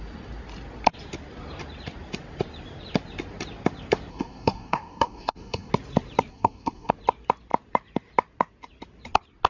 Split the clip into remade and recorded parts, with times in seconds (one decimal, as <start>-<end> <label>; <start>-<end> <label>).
0.0-4.1 recorded; 4.1-5.7 remade; 5.7-6.3 recorded; 6.3-6.9 remade; 6.9-9.5 recorded